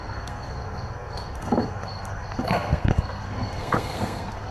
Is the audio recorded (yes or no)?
no